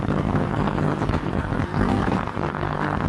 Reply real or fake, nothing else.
fake